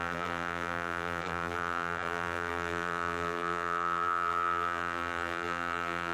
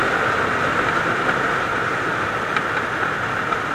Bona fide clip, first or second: second